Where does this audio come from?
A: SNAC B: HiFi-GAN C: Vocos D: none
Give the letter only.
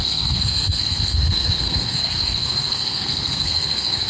A